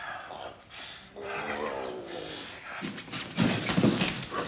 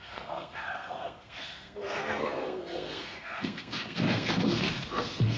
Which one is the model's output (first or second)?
second